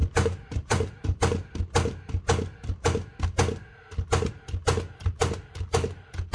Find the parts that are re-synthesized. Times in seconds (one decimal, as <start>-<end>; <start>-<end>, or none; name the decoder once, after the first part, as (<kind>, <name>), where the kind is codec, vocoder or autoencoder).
0.0-1.2 (vocoder, BigVGAN v2)

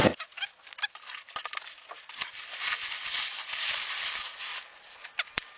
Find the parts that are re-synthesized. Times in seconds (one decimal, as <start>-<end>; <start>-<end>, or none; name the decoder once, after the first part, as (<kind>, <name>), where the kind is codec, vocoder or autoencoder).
3.4-5.6 (vocoder, BigVGAN v2)